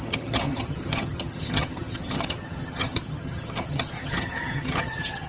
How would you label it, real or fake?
fake